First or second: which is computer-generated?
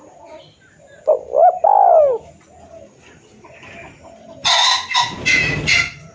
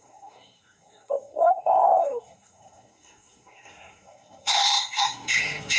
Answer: second